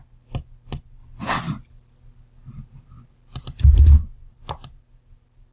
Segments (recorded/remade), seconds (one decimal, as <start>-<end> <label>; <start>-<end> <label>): 0.0-5.5 recorded